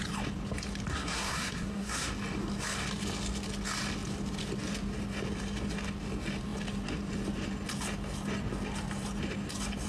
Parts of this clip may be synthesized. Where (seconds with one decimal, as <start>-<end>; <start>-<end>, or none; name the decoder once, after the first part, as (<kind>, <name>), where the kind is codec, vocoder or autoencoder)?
0.9-2.1 (codec, SNAC)